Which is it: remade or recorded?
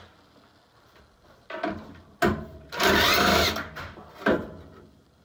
recorded